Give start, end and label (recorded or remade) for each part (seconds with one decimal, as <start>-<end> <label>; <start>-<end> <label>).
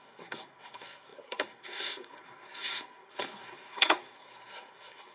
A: 0.0-5.1 remade